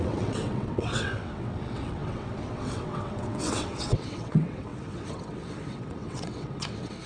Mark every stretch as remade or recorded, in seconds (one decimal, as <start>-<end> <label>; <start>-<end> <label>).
0.0-7.1 remade